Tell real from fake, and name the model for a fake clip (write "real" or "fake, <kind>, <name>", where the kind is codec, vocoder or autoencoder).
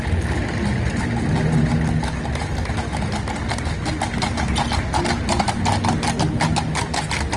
real